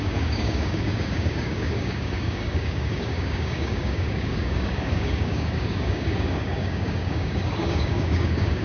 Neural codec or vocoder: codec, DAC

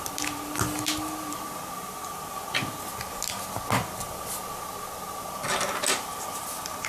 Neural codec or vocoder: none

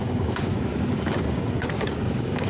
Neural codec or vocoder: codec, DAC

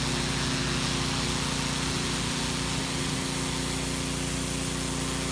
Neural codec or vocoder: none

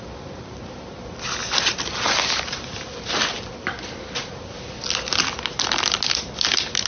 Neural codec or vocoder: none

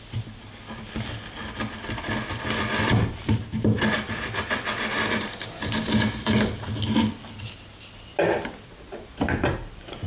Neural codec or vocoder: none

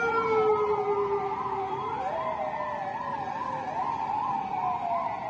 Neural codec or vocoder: none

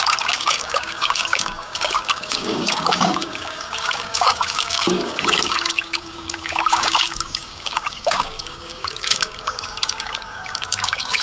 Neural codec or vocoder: codec, DAC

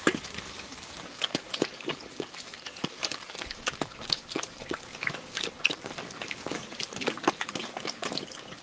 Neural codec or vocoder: codec, DAC